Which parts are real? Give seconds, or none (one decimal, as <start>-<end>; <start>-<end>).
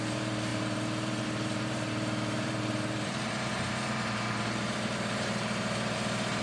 none